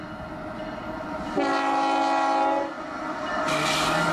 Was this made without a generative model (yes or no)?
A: yes